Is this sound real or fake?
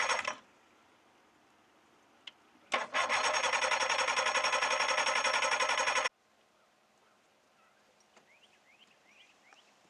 real